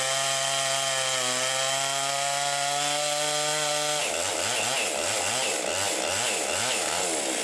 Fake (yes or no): no